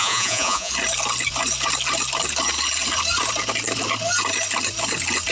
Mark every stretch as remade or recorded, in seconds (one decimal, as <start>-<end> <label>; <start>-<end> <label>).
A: 0.0-0.7 remade; 0.7-5.3 recorded